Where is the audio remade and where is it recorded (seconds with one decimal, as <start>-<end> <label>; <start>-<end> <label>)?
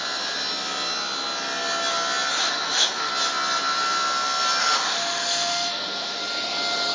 0.0-2.3 recorded; 2.3-3.1 remade; 3.1-4.6 recorded; 4.6-6.2 remade; 6.2-6.9 recorded